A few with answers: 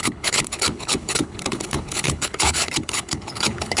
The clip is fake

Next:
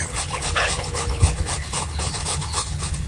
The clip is fake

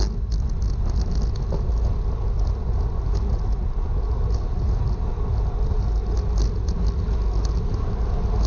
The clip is real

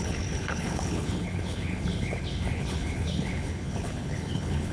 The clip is fake